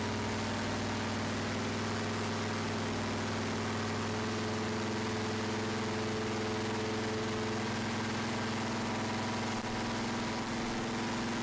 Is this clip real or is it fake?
real